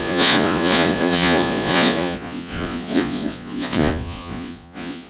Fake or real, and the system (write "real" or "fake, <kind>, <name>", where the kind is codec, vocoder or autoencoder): fake, vocoder, Vocos